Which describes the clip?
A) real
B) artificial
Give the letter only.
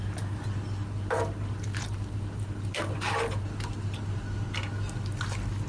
A